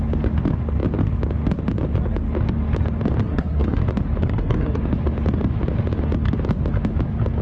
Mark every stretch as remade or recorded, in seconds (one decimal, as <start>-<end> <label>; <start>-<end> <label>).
0.0-3.2 recorded; 3.2-3.8 remade; 3.8-4.2 recorded; 4.2-4.8 remade; 4.8-7.4 recorded